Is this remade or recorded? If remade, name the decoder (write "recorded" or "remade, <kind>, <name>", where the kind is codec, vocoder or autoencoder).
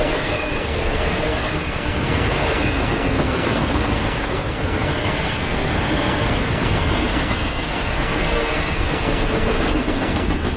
remade, codec, SNAC